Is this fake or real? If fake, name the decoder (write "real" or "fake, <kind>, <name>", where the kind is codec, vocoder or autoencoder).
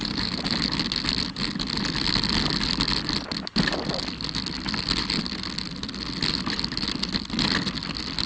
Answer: real